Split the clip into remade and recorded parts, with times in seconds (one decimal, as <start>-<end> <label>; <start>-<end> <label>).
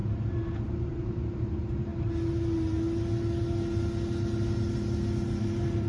0.0-1.9 remade; 1.9-5.4 recorded; 5.4-5.9 remade